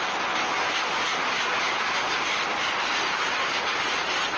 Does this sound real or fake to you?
real